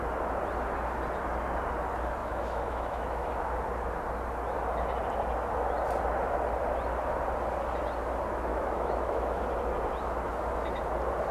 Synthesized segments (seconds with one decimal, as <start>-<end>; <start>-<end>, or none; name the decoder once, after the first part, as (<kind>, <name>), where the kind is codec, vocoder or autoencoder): 2.2-3.3 (autoencoder, DAC-VAE); 8.5-9.4